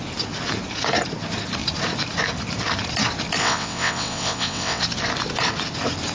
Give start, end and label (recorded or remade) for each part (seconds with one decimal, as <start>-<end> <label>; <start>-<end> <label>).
0.0-3.4 recorded; 3.4-4.8 remade; 4.8-6.1 recorded